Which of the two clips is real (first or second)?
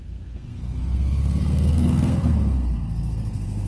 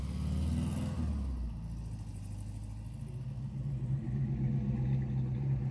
second